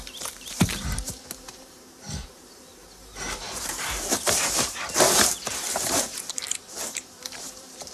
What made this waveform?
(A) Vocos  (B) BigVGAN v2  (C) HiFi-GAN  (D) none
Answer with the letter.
B